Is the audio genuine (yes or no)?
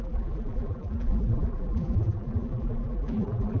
no